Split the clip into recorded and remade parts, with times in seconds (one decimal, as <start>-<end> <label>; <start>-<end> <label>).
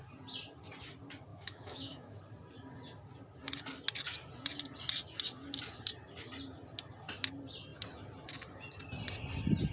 0.0-1.3 recorded; 1.3-2.2 remade; 2.2-9.7 recorded